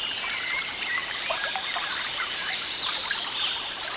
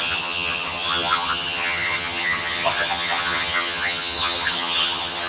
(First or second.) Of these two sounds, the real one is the first